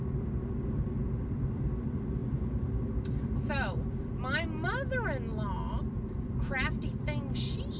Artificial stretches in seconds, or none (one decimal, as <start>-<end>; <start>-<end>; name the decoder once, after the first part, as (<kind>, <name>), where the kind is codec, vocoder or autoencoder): none